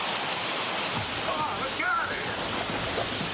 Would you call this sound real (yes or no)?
yes